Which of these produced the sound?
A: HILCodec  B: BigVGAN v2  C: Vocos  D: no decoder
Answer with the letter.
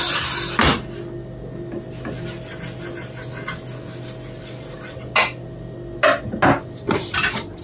D